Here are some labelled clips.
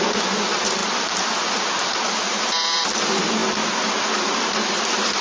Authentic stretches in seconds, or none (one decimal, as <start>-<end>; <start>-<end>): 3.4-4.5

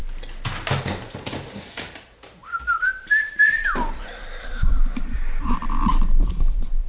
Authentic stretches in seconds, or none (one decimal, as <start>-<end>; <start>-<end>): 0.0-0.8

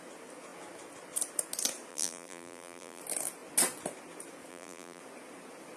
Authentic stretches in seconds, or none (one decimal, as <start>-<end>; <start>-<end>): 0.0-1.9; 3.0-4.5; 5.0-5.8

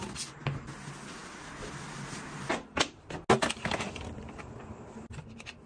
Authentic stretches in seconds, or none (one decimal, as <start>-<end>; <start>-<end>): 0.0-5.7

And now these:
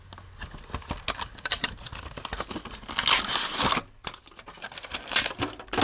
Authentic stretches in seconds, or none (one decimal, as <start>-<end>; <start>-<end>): 0.0-1.3; 1.8-5.8

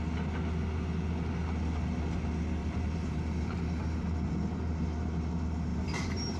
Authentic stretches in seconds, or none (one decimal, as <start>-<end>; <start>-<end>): 0.0-2.6; 3.2-5.7